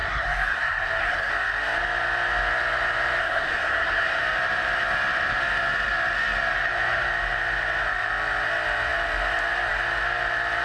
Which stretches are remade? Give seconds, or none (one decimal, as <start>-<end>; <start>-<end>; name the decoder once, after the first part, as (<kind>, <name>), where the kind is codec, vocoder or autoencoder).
0.0-1.3 (codec, SNAC); 3.2-4.2

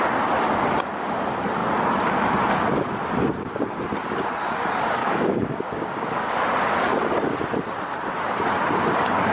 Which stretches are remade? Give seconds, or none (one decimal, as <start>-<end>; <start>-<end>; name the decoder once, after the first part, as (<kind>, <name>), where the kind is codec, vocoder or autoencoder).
5.0-6.3 (codec, DAC)

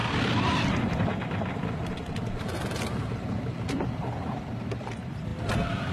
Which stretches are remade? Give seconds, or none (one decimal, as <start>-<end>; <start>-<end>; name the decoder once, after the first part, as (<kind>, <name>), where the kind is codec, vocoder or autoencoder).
3.5-5.9 (vocoder, BigVGAN v2)

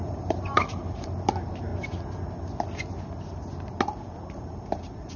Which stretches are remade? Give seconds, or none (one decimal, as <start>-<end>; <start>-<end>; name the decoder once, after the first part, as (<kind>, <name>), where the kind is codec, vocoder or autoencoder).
0.0-1.7 (vocoder, BigVGAN v2); 4.3-5.2

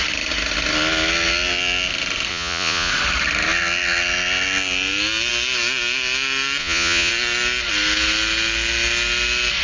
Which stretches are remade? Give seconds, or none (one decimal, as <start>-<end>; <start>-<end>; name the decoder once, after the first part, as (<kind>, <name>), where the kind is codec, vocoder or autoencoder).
2.3-2.9 (vocoder, Vocos); 6.6-7.1

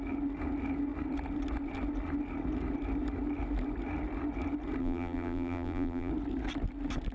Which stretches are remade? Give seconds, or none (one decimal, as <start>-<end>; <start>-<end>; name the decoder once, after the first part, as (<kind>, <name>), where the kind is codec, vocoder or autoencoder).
4.8-6.1 (vocoder, BigVGAN v2)